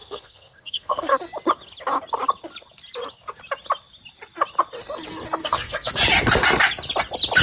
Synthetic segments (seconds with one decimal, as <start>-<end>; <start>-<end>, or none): 0.0-1.1; 5.4-5.9

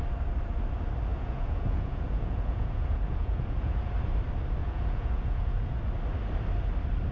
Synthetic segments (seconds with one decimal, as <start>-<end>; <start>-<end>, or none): 1.1-3.9; 4.6-5.8

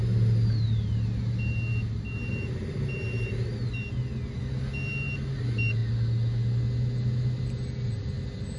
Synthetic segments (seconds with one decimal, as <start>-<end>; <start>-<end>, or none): none

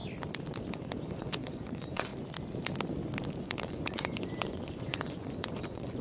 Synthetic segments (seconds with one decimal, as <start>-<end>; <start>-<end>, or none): 0.7-2.1; 3.4-6.0